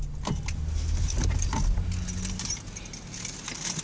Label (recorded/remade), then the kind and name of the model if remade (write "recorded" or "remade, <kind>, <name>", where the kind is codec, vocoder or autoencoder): recorded